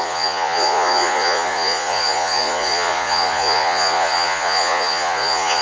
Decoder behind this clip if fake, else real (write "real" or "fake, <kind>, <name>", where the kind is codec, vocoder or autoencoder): fake, vocoder, Vocos